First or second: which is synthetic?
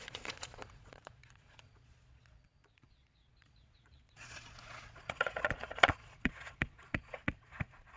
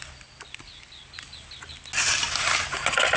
first